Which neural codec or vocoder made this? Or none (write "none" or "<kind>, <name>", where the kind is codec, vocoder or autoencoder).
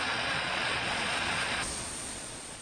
vocoder, Vocos